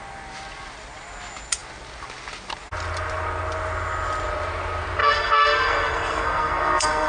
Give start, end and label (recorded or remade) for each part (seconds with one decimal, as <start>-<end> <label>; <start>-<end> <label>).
0.0-5.0 recorded; 5.0-7.1 remade